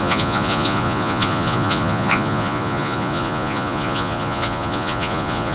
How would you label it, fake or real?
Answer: fake